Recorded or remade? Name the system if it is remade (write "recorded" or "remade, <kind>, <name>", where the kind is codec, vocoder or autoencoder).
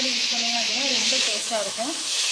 remade, autoencoder, DAC-VAE